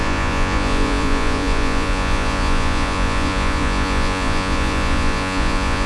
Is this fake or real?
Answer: fake